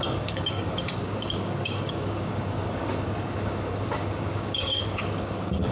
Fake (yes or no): yes